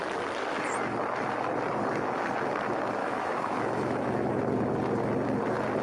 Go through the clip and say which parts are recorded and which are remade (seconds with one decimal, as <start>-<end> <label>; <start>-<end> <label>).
0.0-3.0 recorded; 3.0-4.4 remade; 4.4-5.8 recorded